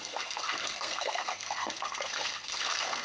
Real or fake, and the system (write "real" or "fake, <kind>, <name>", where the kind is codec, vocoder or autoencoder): fake, codec, SNAC